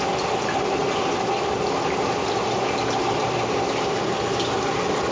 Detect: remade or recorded recorded